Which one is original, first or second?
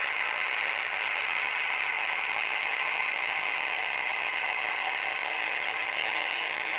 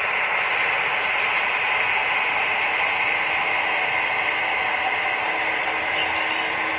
second